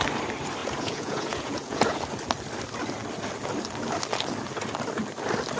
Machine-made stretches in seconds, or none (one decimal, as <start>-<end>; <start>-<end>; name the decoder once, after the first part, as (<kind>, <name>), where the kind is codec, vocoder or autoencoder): 0.6-2.0 (vocoder, Vocos)

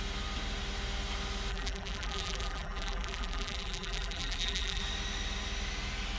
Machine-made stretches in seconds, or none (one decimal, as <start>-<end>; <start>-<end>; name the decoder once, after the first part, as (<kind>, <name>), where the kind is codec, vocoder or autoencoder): 1.5-4.8 (vocoder, BigVGAN v2)

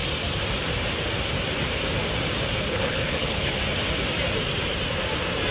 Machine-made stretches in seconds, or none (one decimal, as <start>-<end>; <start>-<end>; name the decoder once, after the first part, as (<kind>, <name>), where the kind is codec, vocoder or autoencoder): 2.6-3.6 (codec, HILCodec)

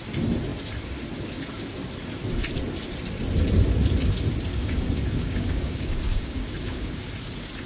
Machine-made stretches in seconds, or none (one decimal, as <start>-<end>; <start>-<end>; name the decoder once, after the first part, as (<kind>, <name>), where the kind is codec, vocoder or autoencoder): 4.5-7.1 (codec, DAC)

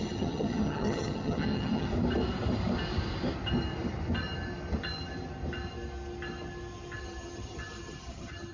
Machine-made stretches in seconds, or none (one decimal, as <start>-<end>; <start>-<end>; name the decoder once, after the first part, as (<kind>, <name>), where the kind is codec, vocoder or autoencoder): 0.0-1.9 (vocoder, HiFi-GAN); 7.0-8.5

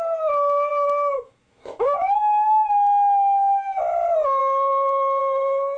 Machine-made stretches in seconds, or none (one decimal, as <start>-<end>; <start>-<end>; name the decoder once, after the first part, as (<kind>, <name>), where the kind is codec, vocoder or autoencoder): 0.7-3.8 (autoencoder, DAC-VAE); 4.4-5.2

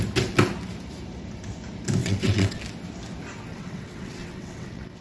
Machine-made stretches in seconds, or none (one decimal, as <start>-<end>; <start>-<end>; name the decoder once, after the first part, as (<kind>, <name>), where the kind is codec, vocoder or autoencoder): 2.0-2.6 (vocoder, WaveNeXt); 3.5-5.0

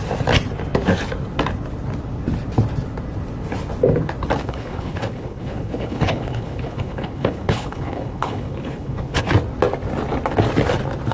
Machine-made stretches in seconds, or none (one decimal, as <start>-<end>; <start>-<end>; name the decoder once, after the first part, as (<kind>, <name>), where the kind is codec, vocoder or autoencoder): 4.4-9.3 (codec, HILCodec)